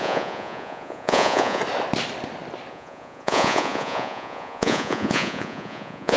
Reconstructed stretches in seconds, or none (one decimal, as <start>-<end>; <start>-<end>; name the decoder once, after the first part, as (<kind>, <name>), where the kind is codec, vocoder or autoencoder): 0.0-1.6 (vocoder, Vocos); 2.7-6.2